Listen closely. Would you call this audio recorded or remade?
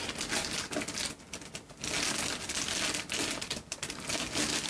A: recorded